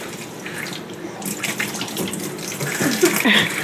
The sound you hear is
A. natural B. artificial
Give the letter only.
A